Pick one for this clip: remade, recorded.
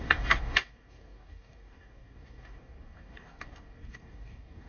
remade